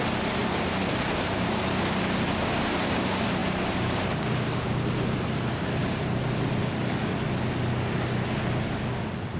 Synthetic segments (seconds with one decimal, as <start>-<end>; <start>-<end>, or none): 0.4-1.7; 3.4-4.2; 5.8-6.5

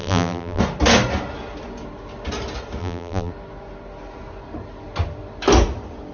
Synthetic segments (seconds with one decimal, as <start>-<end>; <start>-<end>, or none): 0.0-0.6; 2.8-3.3